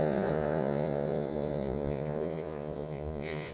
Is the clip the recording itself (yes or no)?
no